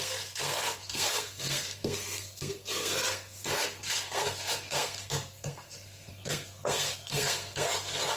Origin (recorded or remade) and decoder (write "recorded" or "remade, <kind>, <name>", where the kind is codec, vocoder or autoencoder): remade, codec, SNAC